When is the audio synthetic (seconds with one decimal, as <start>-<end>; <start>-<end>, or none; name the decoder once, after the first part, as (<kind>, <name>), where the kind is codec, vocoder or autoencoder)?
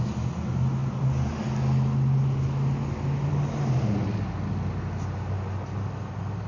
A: none